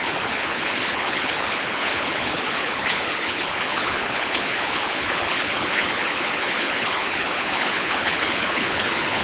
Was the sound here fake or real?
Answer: fake